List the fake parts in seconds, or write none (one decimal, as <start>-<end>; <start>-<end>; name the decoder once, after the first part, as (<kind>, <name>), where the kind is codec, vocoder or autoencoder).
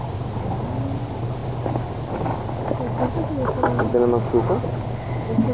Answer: none